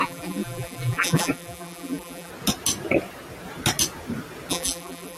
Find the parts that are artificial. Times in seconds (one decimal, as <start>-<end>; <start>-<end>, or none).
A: 0.0-2.3; 4.5-5.2